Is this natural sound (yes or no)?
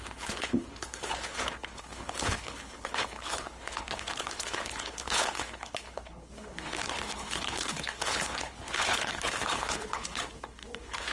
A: no